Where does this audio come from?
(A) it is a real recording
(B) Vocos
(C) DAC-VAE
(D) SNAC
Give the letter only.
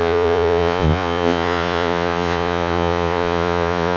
B